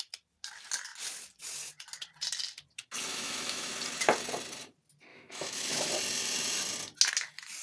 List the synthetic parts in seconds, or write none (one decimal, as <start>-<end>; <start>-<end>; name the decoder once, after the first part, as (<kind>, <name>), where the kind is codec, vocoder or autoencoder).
3.1-3.7 (autoencoder, DAC-VAE); 5.1-5.9